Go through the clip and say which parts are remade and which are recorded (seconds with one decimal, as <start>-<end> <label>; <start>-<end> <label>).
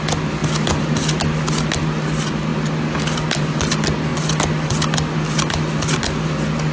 0.0-6.7 recorded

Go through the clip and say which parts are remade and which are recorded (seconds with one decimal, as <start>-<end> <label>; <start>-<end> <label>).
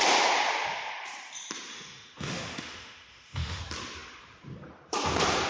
0.0-1.7 recorded; 1.7-3.6 remade; 3.6-5.5 recorded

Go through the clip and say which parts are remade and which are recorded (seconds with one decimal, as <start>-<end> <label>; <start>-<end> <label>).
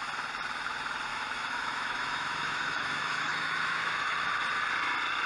0.0-1.1 recorded; 1.1-4.3 remade; 4.3-5.3 recorded